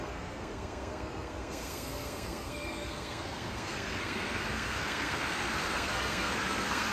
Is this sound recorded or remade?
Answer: remade